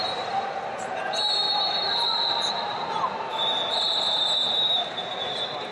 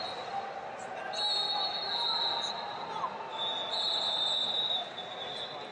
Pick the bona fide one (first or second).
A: second